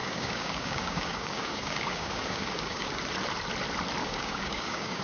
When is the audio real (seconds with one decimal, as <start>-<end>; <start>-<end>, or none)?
3.0-4.0